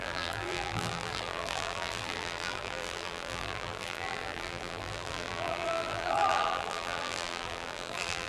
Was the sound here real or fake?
fake